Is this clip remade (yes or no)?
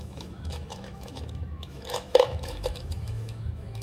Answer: yes